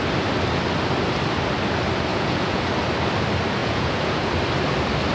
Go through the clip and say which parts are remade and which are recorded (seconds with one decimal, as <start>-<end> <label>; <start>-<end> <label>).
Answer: 0.0-2.1 recorded; 2.1-2.6 remade; 2.6-3.6 recorded; 3.6-4.3 remade; 4.3-5.1 recorded